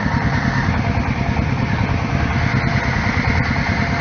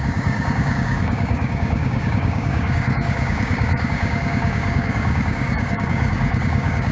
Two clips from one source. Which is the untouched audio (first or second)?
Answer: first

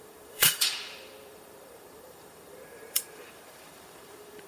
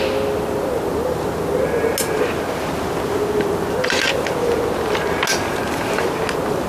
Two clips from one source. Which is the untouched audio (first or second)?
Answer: second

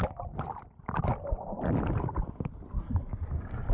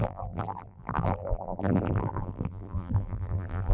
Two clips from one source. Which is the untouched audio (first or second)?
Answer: first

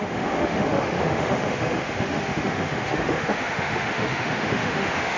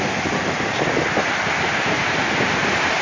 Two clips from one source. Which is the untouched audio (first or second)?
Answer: second